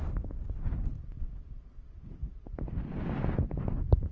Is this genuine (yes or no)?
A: yes